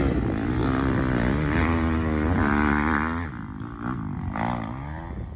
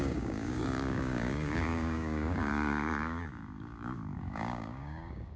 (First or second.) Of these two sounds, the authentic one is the first